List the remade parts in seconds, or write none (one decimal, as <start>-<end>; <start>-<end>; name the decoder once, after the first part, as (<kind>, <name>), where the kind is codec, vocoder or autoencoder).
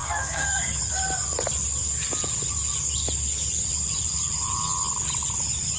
0.0-0.8 (codec, SNAC)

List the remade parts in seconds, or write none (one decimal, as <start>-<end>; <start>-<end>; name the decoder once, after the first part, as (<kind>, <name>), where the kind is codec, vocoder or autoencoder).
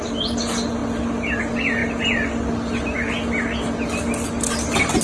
none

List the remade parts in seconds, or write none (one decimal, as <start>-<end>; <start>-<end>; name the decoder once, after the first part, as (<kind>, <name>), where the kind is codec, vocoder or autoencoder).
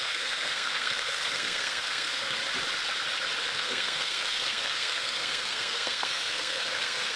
0.0-2.4 (codec, SNAC); 3.4-7.2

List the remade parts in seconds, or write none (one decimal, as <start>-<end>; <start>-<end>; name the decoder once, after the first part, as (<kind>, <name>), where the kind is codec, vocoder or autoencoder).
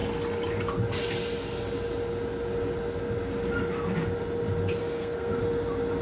4.8-5.4 (codec, SNAC)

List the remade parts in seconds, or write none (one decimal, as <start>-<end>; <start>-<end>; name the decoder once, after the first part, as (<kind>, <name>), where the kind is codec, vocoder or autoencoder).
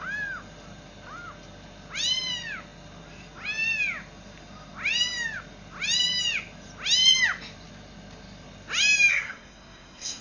9.1-10.2 (codec, SNAC)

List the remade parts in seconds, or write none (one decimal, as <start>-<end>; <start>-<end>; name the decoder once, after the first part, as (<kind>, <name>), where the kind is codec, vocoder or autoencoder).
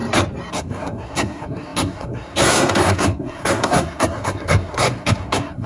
0.5-5.7 (codec, SNAC)